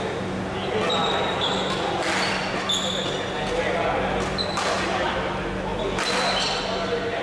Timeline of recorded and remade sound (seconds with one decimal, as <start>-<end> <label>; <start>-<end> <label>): 0.0-7.2 recorded